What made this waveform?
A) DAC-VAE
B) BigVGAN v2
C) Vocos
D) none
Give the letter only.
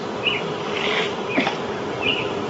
B